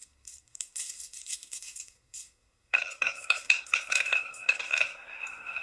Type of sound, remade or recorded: remade